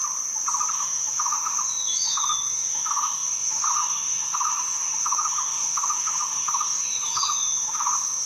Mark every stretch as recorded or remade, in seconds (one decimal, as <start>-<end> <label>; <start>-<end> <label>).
0.0-0.7 recorded; 0.7-8.3 remade